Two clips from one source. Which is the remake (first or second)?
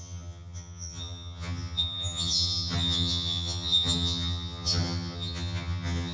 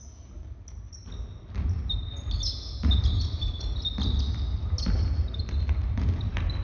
first